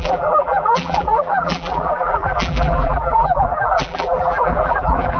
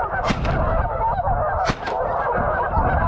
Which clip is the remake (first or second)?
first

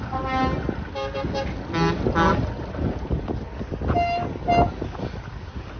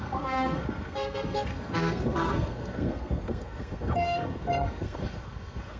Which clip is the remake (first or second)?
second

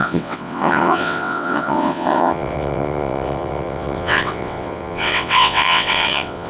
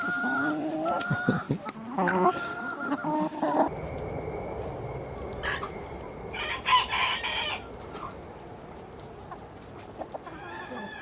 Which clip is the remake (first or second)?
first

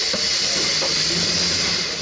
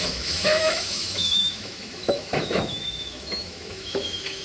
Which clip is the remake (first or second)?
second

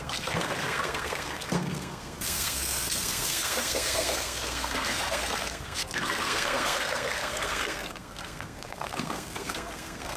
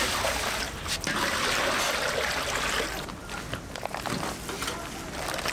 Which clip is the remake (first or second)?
first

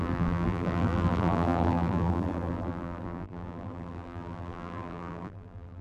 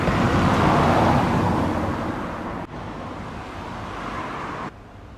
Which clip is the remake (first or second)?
first